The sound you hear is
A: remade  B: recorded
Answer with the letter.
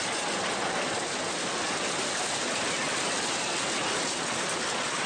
B